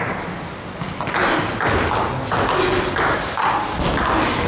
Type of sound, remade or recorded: recorded